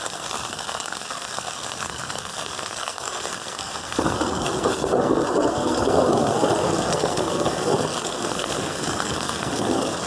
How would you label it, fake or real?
fake